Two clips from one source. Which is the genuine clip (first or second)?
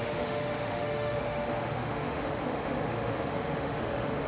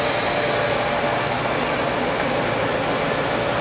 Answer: second